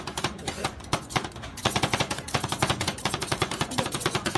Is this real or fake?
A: fake